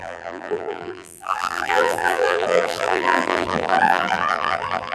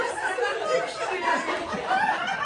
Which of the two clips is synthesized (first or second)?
first